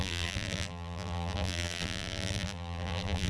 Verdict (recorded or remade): remade